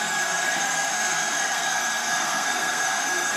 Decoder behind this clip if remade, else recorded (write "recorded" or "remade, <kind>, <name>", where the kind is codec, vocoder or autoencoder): remade, codec, SNAC